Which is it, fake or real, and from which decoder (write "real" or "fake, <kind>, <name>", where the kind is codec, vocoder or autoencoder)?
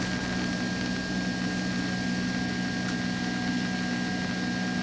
real